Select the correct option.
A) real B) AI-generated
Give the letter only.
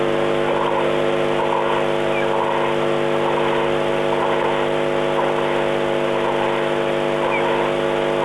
A